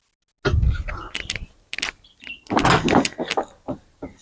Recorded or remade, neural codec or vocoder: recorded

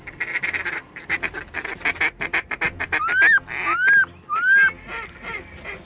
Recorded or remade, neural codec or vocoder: recorded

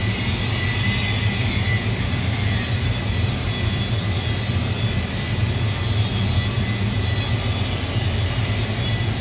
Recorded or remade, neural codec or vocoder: recorded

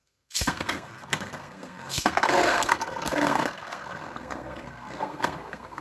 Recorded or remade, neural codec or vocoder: remade, codec, SNAC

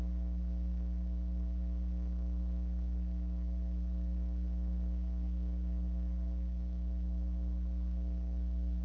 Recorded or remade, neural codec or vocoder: remade, codec, SNAC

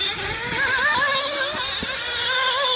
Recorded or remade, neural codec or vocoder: recorded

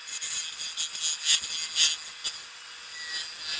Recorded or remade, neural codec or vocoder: recorded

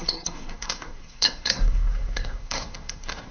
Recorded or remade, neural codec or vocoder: remade, codec, SNAC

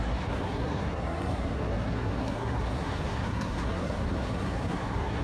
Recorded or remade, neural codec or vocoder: remade, codec, SNAC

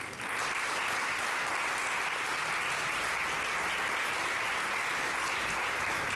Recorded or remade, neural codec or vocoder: recorded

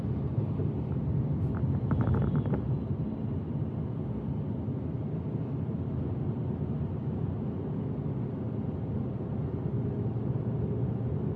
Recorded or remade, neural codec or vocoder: recorded